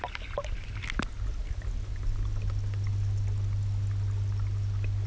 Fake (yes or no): no